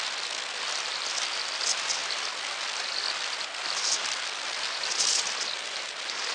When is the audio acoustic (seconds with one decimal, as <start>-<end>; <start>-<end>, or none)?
0.0-6.3